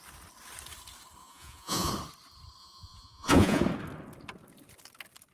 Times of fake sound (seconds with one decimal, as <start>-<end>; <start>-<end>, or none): 1.2-1.9; 2.6-3.6

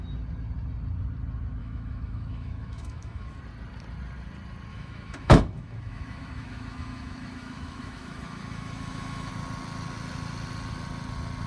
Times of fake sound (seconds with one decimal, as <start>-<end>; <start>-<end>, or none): 1.6-3.3; 4.7-9.3

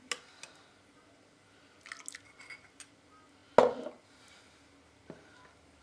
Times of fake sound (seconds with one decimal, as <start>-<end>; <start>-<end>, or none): none

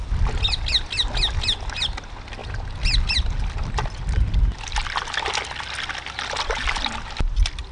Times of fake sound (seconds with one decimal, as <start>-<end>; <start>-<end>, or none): none

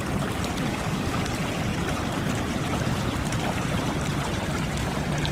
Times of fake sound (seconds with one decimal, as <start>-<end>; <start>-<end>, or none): 0.7-1.2

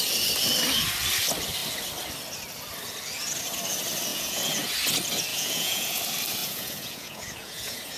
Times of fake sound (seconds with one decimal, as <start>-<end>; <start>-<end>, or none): 4.1-4.7; 5.3-6.0; 6.4-8.0

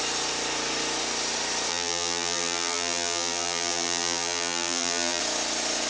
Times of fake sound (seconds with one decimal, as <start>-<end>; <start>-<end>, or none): 1.7-5.2

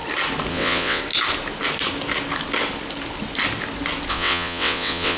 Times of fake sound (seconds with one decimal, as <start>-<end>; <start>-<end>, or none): 0.5-1.0; 4.1-5.2